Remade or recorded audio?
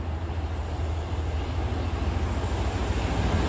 recorded